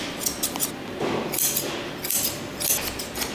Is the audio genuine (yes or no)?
yes